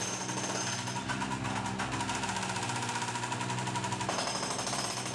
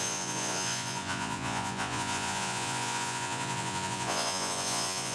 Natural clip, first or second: first